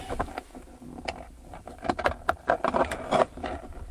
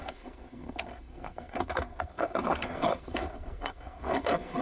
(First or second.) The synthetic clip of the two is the second